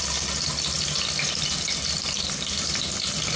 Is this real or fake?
real